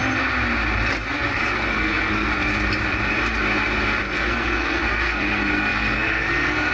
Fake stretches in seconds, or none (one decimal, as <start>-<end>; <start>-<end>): 1.3-2.3; 4.0-6.7